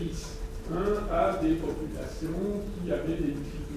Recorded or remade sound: recorded